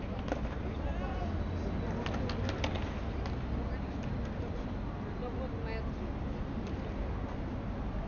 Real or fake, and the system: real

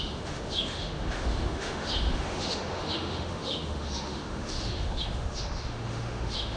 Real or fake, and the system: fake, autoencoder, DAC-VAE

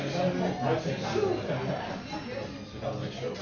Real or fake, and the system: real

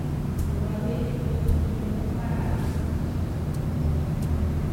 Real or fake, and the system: real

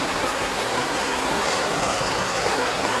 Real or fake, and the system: fake, codec, SNAC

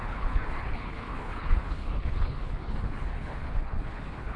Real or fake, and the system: fake, codec, HILCodec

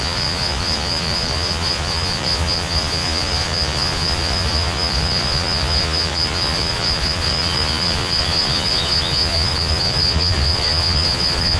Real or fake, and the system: fake, vocoder, Vocos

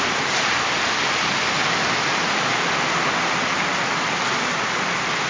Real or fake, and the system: real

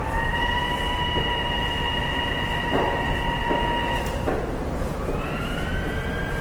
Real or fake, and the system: real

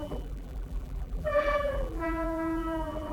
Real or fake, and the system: fake, vocoder, BigVGAN v2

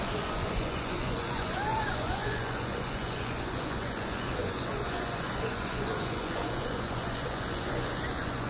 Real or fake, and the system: fake, vocoder, Vocos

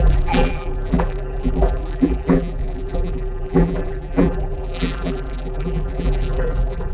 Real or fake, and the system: fake, vocoder, BigVGAN v2